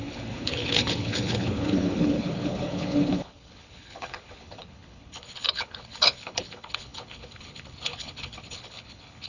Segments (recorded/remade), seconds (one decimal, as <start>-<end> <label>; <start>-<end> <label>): 0.0-9.3 remade

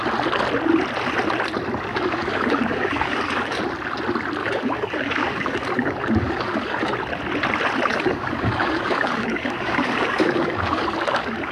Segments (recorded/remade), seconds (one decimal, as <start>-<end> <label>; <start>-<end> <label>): 0.0-1.9 recorded; 1.9-3.6 remade; 3.6-4.4 recorded; 4.4-6.9 remade; 6.9-7.9 recorded; 7.9-11.5 remade

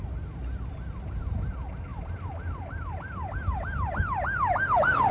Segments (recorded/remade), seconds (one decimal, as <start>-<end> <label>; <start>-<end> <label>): 0.0-5.1 recorded